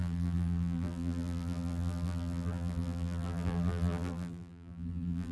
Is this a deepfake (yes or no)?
yes